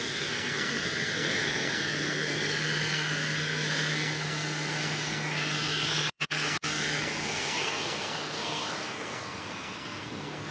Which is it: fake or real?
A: fake